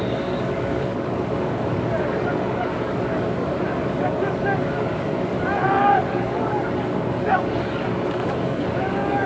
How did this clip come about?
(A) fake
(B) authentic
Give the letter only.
A